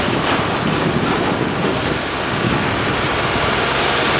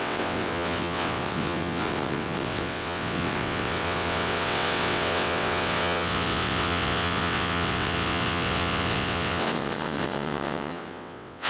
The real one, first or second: first